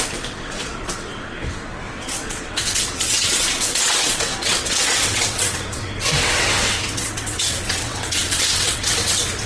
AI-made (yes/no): yes